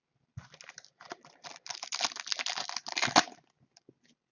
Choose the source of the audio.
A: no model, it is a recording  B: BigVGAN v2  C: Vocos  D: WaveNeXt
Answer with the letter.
A